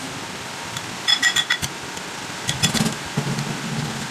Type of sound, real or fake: real